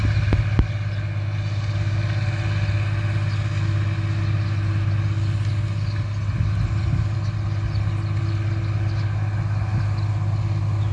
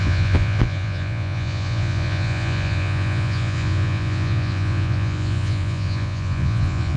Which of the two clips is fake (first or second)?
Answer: second